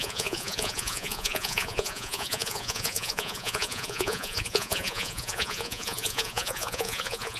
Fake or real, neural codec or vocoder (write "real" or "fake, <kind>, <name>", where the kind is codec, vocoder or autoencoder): fake, vocoder, Vocos